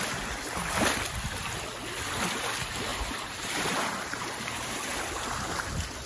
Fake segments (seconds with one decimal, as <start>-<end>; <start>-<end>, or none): 2.9-5.2